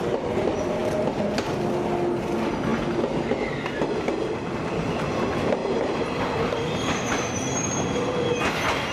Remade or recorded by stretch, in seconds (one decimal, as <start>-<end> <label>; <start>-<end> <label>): 0.0-5.6 recorded; 5.6-6.2 remade; 6.2-8.9 recorded